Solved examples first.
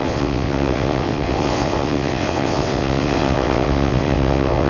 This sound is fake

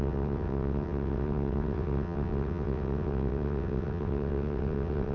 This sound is fake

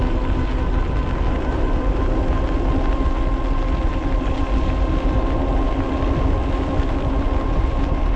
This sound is real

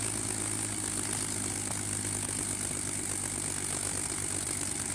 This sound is real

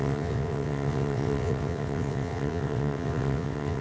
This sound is fake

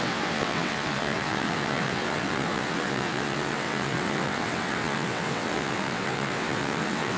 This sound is fake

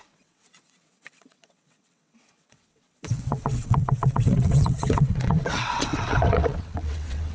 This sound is fake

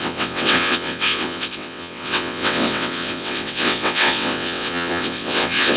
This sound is fake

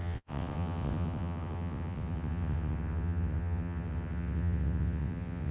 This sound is fake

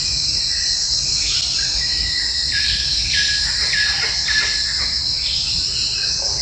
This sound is real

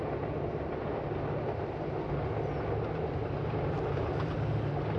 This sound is real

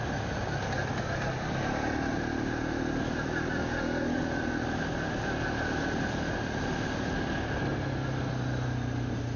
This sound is real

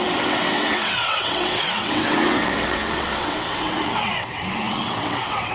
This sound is fake